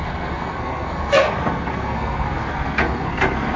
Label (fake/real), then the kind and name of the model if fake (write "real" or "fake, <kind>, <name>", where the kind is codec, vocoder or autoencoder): fake, codec, SNAC